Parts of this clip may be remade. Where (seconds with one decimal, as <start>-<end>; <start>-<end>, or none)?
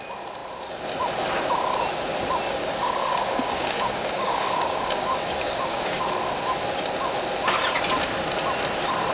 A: 2.6-6.0